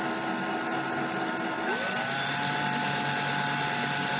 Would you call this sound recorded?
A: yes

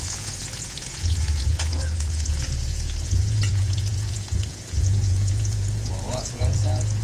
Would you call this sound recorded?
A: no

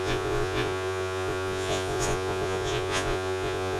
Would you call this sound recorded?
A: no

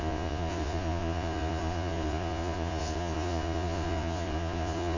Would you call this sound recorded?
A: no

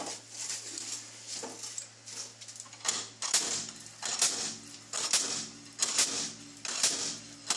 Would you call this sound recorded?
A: yes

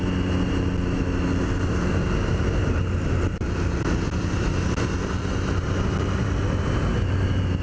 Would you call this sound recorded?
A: yes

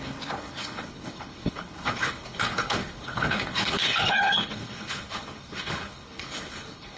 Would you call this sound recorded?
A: no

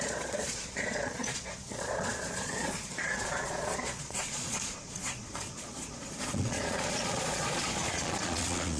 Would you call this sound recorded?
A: no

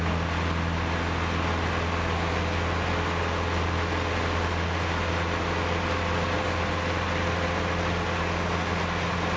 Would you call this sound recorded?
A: yes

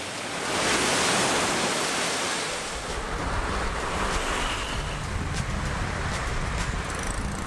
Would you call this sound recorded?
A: yes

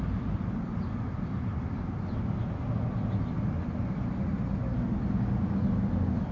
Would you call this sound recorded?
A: yes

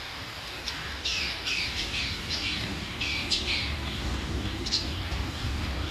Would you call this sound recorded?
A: no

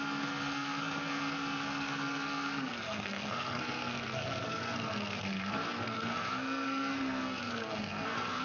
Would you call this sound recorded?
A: no